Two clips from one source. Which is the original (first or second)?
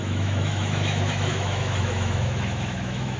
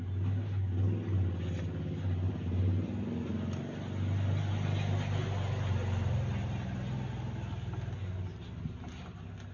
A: second